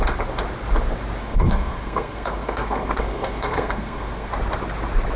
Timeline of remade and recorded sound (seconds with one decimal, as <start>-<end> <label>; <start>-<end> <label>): 0.0-1.2 recorded; 1.2-4.3 remade; 4.3-5.2 recorded